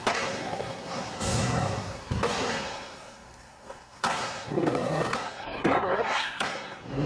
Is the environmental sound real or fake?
fake